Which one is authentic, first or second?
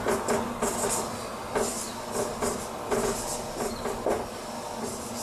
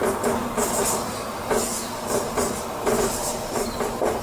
first